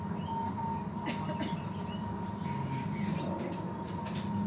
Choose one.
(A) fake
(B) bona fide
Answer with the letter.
B